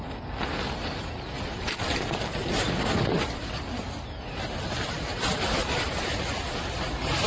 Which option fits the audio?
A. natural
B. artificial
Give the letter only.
A